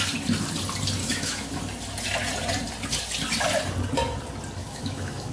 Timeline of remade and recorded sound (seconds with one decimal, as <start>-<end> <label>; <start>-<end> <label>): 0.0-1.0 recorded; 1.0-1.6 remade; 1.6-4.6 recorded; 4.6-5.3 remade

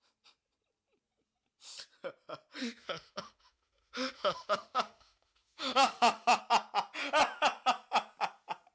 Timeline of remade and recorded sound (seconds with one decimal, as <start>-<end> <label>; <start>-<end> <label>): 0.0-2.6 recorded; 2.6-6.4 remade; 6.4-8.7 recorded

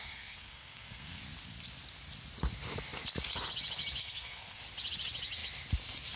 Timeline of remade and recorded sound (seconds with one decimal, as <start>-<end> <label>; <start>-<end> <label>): 0.0-1.2 remade; 1.2-4.0 recorded; 4.0-4.6 remade; 4.6-6.2 recorded

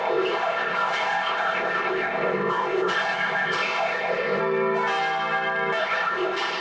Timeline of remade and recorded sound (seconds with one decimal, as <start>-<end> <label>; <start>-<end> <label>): 0.0-4.4 remade; 4.4-5.8 recorded; 5.8-6.6 remade

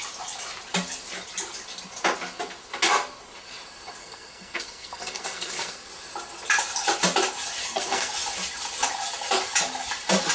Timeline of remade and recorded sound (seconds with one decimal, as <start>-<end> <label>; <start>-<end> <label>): 0.0-4.0 recorded; 4.0-5.9 remade; 5.9-7.6 recorded; 7.6-8.1 remade; 8.1-10.3 recorded

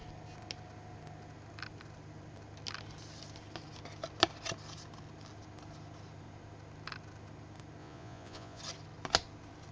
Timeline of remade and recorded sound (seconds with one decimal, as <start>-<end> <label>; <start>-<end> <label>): 0.0-7.8 recorded; 7.8-8.6 remade; 8.6-9.7 recorded

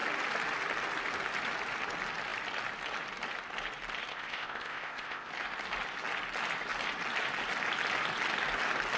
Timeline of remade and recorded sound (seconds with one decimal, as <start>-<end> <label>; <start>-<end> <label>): 0.0-4.1 recorded; 4.1-5.3 remade; 5.3-9.0 recorded

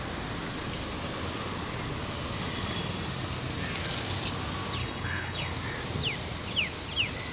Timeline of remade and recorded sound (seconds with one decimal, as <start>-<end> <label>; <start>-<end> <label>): 0.0-4.8 recorded; 4.8-5.5 remade; 5.5-7.3 recorded